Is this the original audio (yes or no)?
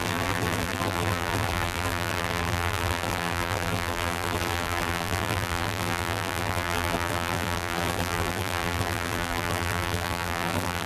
no